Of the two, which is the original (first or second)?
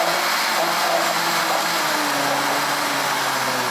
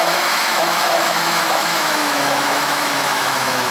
first